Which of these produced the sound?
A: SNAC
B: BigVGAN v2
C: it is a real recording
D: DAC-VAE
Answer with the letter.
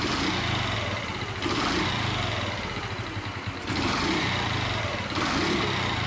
C